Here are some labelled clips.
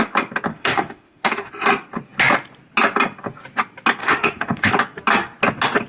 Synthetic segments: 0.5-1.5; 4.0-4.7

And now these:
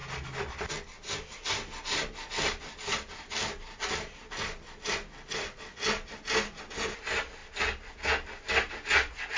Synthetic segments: none

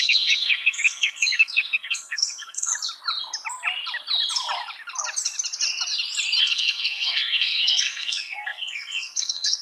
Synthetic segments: 0.0-2.7; 6.4-9.6

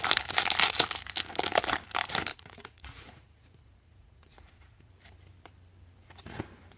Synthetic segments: 2.3-4.9